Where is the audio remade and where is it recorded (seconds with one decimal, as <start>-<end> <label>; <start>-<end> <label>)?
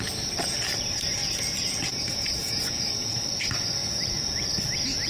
0.0-1.2 recorded; 1.2-2.9 remade; 2.9-5.1 recorded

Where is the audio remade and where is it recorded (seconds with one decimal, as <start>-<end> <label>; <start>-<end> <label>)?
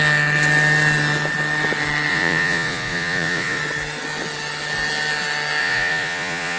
0.0-2.1 recorded; 2.1-3.6 remade; 3.6-5.6 recorded; 5.6-6.6 remade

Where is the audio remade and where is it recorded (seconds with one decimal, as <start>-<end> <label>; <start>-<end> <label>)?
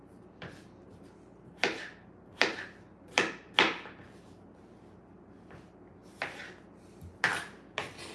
0.0-6.0 recorded; 6.0-6.5 remade; 6.5-8.1 recorded